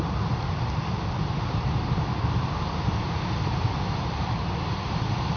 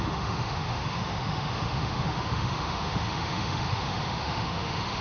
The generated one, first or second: second